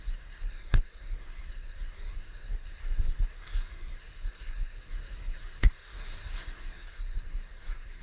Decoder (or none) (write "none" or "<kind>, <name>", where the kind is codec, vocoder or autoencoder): codec, SNAC